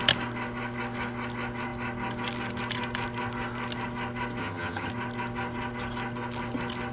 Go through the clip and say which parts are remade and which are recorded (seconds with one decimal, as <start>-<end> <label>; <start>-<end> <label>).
0.0-4.4 recorded; 4.4-4.9 remade; 4.9-6.9 recorded